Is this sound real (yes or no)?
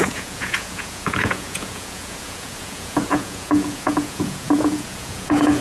no